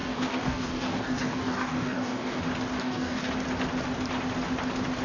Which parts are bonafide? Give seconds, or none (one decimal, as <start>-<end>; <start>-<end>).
2.4-2.8; 3.3-5.0